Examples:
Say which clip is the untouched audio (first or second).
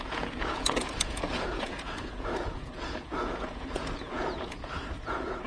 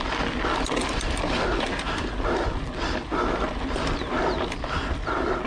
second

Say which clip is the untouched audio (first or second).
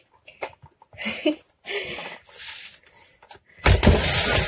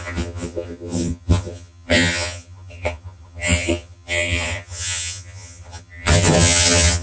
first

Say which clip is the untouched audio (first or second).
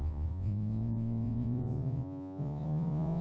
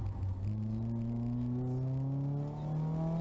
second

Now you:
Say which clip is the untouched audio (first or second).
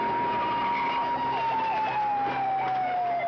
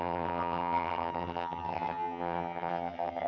first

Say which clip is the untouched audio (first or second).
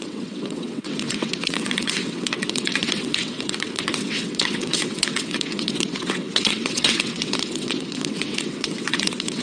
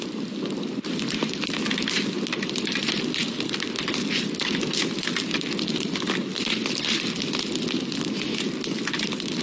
second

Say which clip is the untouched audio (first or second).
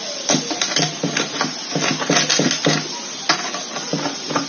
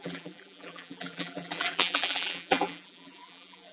first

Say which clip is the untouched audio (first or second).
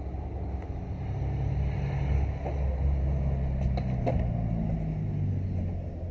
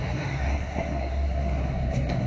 first